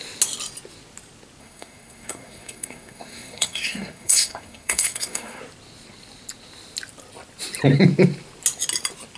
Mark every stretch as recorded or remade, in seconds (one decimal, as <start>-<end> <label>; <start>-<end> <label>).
0.0-1.4 recorded; 1.4-5.4 remade; 5.4-9.2 recorded